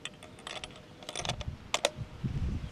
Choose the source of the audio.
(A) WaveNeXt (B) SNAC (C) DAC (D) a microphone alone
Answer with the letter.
D